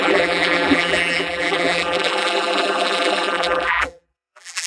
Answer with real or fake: fake